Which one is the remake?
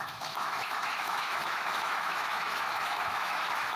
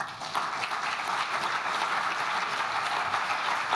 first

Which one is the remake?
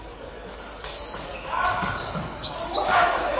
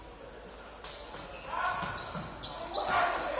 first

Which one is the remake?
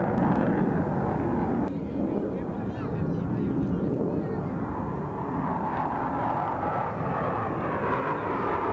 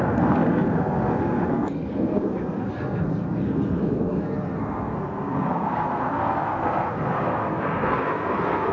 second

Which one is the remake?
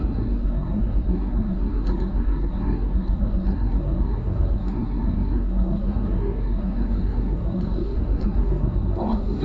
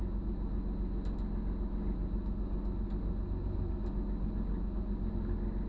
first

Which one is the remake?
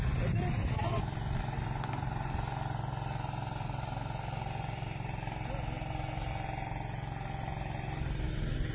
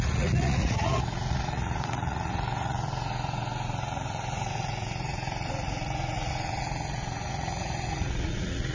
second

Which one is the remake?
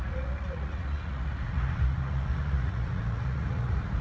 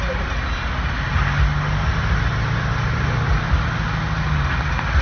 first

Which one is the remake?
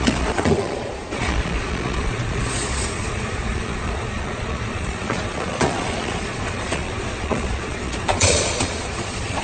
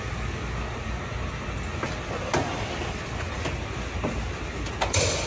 first